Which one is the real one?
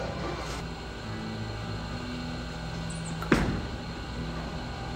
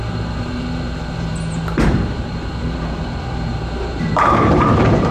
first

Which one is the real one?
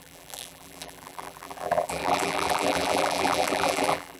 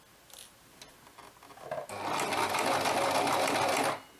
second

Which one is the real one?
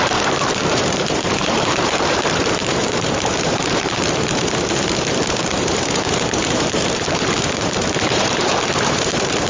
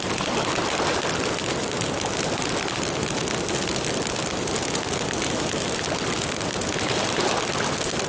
second